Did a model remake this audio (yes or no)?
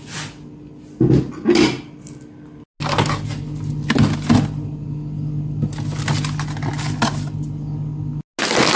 no